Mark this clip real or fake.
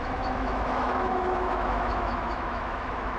fake